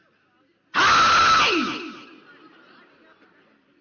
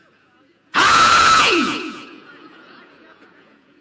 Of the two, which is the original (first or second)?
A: first